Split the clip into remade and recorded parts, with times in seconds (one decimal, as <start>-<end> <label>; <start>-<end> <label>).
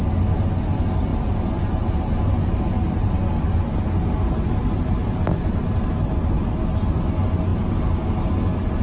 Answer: 0.0-8.8 recorded